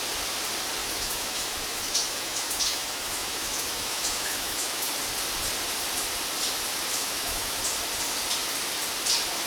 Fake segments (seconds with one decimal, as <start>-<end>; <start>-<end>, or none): 0.8-4.9; 7.0-7.6